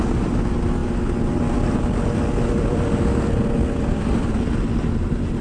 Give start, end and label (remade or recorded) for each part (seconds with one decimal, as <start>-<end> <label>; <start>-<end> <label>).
0.0-5.4 recorded